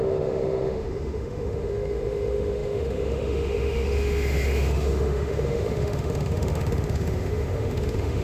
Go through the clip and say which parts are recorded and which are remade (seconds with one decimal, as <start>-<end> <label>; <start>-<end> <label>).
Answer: 0.0-8.2 remade